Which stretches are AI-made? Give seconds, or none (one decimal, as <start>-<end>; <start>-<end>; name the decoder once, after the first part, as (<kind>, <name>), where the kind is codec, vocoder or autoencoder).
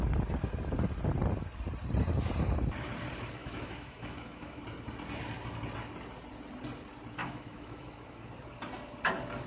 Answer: 3.4-4.6 (autoencoder, DAC-VAE); 7.2-8.3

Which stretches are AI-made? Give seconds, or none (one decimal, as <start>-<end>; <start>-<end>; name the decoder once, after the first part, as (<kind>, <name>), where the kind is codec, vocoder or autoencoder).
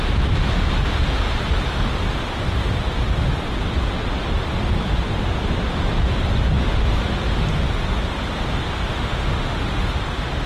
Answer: 8.9-9.9 (autoencoder, DAC-VAE)